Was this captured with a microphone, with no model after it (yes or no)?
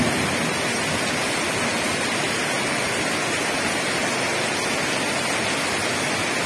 yes